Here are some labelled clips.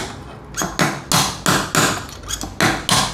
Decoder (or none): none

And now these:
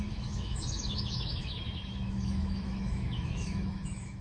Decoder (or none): autoencoder, DAC-VAE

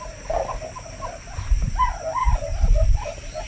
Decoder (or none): none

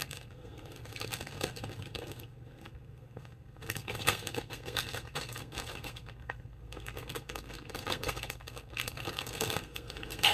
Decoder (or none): codec, SNAC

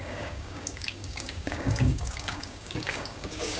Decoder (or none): codec, DAC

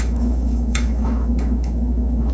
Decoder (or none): autoencoder, DAC-VAE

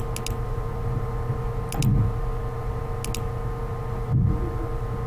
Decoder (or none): none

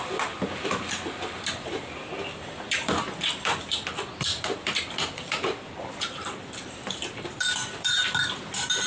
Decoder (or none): vocoder, BigVGAN v2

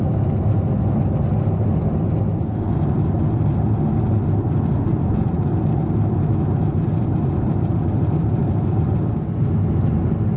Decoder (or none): none